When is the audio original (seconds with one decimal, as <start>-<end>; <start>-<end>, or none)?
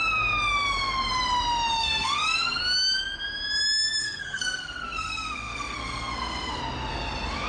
0.0-1.8; 2.6-4.0; 6.6-7.5